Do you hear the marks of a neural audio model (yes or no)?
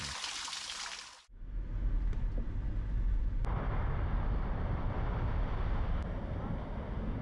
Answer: no